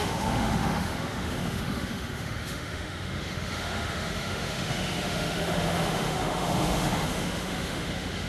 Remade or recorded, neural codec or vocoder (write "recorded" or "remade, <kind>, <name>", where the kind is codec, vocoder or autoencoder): remade, autoencoder, DAC-VAE